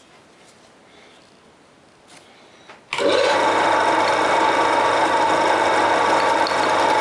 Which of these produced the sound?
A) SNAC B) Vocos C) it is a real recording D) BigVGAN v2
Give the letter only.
C